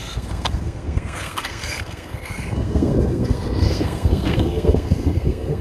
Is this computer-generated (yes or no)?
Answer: yes